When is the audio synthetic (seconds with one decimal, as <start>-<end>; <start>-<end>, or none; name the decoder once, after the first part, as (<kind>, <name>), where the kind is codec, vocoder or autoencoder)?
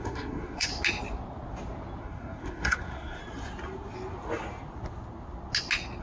0.0-0.7 (codec, SNAC); 2.0-3.2